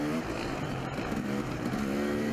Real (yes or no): yes